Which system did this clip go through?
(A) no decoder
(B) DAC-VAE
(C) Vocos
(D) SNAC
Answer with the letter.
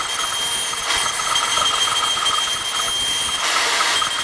A